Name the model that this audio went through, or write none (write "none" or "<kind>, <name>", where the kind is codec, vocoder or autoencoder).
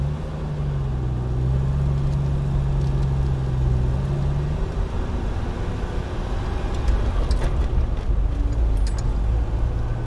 none